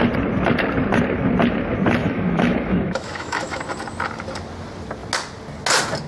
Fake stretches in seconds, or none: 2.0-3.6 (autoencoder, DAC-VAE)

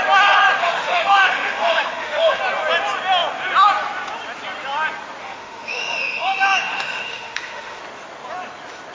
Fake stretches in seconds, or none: 0.6-2.4 (autoencoder, DAC-VAE); 5.2-7.8

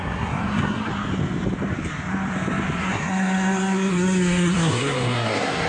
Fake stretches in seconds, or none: 0.0-0.9 (codec, SNAC); 2.8-5.7

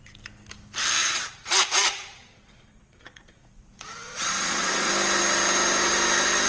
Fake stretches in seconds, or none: 1.0-4.9 (vocoder, Vocos)

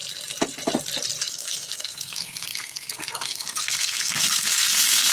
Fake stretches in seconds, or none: 1.2-5.1 (codec, SNAC)

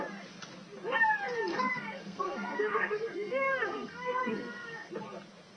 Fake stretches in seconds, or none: 1.5-4.9 (codec, SNAC)

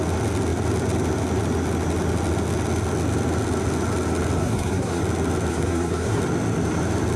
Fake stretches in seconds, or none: 4.4-5.0 (codec, SNAC); 5.5-6.2